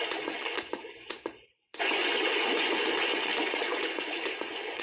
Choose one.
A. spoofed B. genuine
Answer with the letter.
A